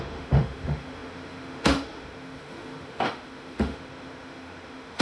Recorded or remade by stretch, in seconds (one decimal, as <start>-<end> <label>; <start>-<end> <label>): 0.0-5.0 remade